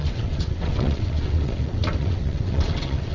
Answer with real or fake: fake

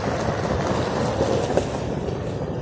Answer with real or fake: real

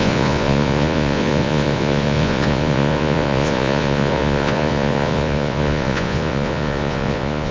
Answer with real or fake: fake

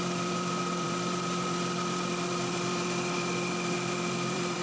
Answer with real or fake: fake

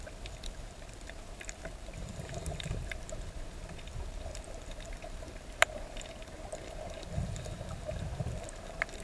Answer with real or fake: fake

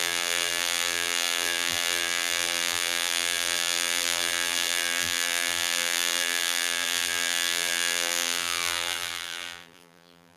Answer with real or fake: fake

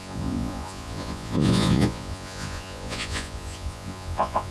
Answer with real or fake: fake